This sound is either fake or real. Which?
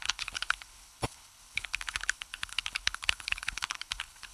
fake